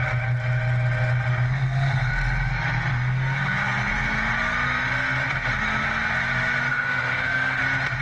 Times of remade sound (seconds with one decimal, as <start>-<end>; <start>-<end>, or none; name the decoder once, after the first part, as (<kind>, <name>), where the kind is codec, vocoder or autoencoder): 1.3-2.1 (codec, SNAC); 2.9-3.9; 6.7-7.6